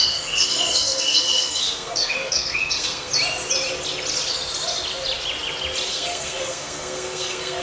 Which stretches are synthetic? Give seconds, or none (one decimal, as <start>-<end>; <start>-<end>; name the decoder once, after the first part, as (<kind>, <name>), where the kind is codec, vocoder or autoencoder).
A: 0.0-3.1 (codec, SNAC); 5.9-7.6